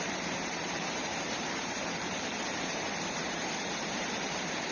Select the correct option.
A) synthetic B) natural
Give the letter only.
A